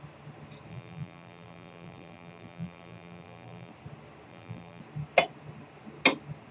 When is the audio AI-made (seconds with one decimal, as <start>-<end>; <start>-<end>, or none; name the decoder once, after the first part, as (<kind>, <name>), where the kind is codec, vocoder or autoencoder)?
0.7-3.7 (vocoder, BigVGAN v2); 4.3-4.8